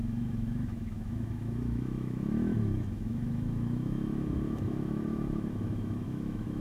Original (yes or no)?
no